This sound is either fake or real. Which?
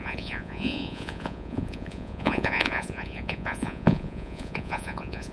fake